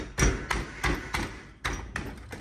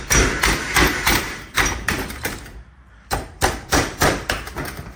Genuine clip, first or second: first